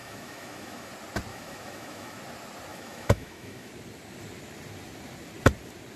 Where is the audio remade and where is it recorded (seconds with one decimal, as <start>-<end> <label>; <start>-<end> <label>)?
0.0-0.9 remade; 0.9-1.3 recorded; 1.3-2.2 remade; 2.2-2.7 recorded; 2.7-3.7 remade; 3.7-6.0 recorded